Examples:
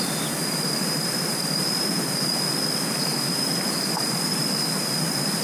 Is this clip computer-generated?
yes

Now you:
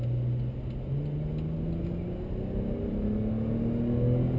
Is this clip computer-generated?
no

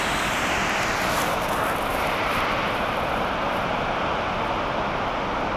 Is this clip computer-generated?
no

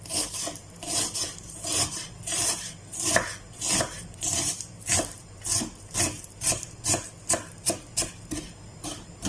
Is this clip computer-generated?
yes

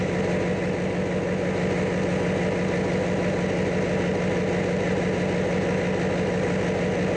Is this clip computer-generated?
no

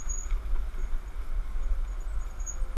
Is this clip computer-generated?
no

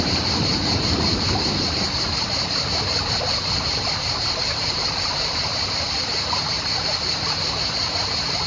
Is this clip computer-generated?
yes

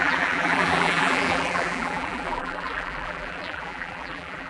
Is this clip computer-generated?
yes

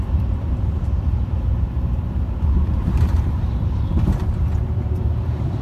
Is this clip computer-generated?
yes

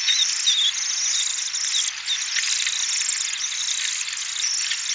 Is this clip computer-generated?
no